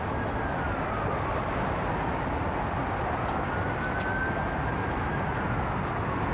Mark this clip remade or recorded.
recorded